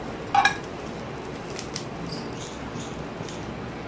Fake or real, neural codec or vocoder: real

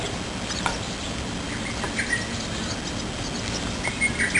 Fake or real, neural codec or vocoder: real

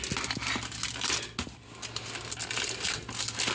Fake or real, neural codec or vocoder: real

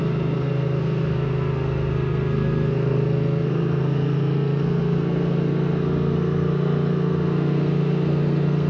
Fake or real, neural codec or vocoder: fake, codec, SNAC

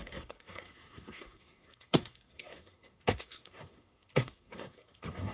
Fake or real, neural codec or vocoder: fake, codec, SNAC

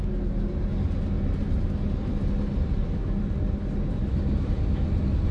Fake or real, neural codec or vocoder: real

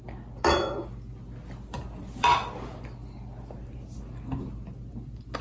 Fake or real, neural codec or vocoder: real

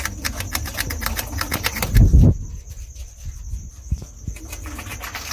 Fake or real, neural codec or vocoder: real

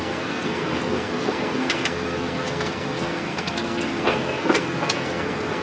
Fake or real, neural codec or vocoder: fake, codec, SNAC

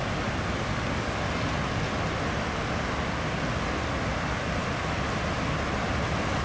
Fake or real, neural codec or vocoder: real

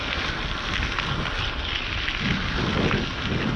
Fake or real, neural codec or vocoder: real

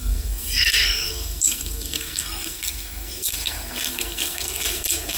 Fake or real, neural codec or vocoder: fake, codec, SNAC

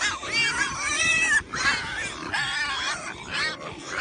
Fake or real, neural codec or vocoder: real